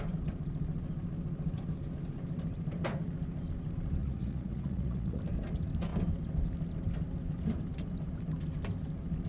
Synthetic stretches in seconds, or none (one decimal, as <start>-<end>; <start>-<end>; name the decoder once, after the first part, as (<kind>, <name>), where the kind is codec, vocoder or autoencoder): 4.0-5.2 (vocoder, Vocos)